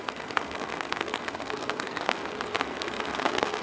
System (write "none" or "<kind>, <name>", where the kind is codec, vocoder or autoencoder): codec, SNAC